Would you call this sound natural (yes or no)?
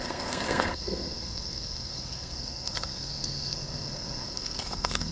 no